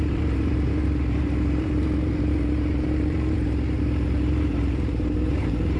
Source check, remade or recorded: remade